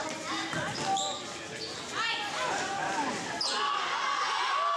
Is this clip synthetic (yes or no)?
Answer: no